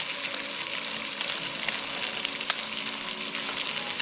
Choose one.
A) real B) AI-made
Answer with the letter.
A